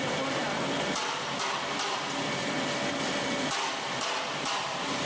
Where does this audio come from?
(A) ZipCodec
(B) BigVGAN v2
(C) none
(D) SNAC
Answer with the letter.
B